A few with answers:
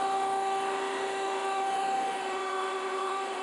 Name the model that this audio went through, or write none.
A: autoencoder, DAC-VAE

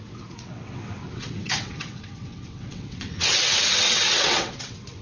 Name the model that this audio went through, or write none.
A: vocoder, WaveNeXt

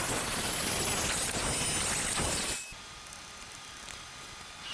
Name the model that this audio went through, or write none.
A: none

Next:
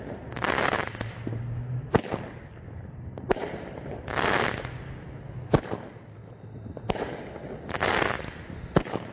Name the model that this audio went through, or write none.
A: none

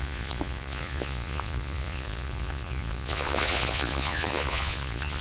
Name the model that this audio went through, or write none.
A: vocoder, Vocos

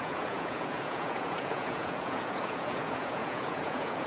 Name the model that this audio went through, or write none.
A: vocoder, Vocos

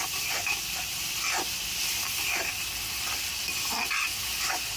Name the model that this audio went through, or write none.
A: none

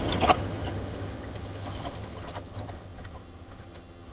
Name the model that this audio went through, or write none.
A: vocoder, HiFi-GAN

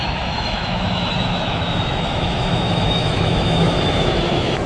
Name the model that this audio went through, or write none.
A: autoencoder, DAC-VAE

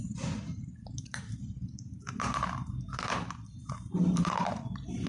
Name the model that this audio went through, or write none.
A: vocoder, BigVGAN v2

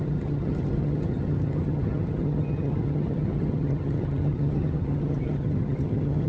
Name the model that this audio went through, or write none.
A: vocoder, HiFi-GAN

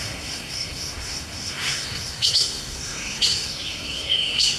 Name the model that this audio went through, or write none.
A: codec, SNAC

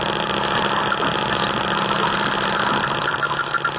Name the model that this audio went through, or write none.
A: none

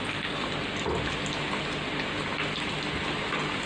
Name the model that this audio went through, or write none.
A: none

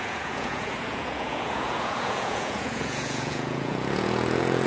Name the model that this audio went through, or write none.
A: vocoder, Vocos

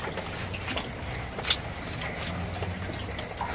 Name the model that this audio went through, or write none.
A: none